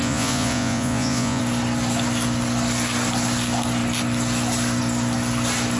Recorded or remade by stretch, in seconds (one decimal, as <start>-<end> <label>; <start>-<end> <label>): 0.0-1.4 remade; 1.4-5.8 recorded